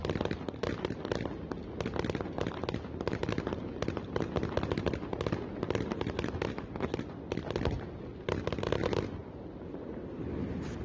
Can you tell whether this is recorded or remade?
recorded